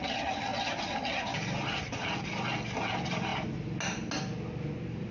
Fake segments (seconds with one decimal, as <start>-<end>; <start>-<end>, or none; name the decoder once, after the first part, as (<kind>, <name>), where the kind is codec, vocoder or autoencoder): none